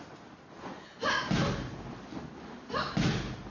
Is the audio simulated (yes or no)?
no